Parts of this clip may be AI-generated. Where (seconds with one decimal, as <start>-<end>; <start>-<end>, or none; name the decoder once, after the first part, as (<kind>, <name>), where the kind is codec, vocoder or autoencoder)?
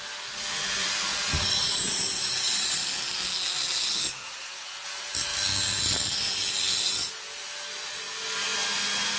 1.1-2.9 (vocoder, Vocos)